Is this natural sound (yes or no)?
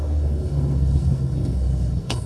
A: no